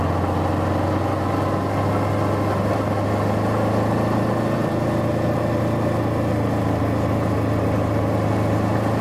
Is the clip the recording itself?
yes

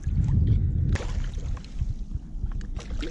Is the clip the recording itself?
yes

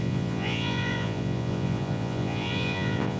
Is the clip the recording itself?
no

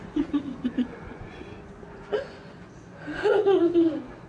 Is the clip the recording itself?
no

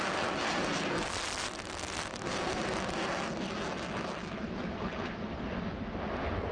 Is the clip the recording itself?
yes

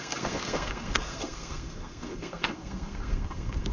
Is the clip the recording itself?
no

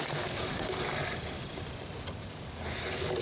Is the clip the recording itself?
yes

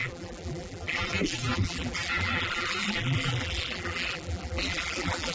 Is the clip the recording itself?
no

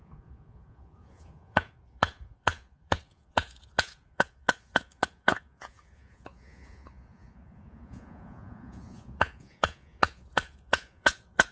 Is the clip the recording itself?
no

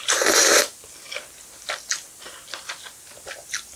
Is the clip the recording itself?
yes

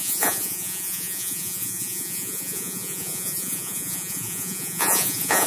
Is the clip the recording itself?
no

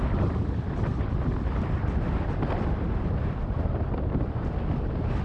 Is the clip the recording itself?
yes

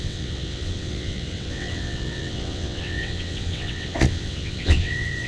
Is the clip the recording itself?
no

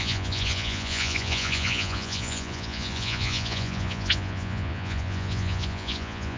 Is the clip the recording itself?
no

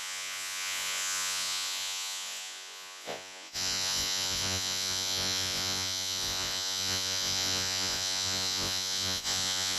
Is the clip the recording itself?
no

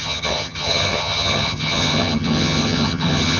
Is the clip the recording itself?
no